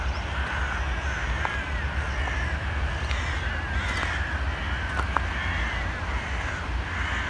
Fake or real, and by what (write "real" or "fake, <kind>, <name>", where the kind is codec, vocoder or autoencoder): real